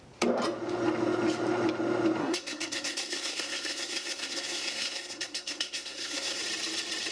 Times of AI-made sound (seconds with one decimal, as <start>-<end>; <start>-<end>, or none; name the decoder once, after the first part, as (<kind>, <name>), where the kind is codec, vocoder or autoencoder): 2.2-6.4 (codec, SNAC)